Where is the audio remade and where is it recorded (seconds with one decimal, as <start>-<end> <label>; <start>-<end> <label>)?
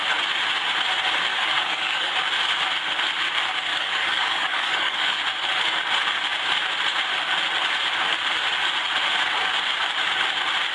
0.0-1.3 recorded; 1.3-2.1 remade; 2.1-3.7 recorded; 3.7-5.2 remade; 5.2-10.7 recorded